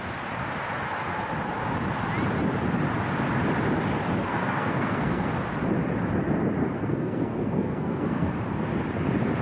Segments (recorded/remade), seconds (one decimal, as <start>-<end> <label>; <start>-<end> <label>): 0.0-4.3 recorded; 4.3-5.3 remade; 5.3-6.6 recorded; 6.6-8.3 remade; 8.3-9.4 recorded